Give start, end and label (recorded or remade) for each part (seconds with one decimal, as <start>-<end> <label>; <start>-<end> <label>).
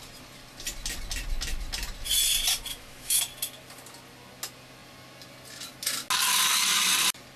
0.0-2.7 recorded; 2.7-3.2 remade; 3.2-7.4 recorded